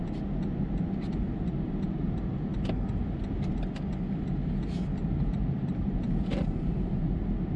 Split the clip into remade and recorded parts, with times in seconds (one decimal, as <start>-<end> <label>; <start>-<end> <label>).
0.0-5.0 recorded; 5.0-7.1 remade; 7.1-7.6 recorded